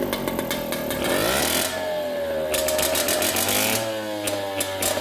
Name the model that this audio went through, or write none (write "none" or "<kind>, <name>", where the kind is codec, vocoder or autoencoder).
none